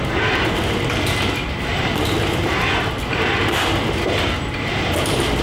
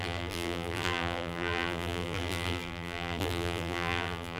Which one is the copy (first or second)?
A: second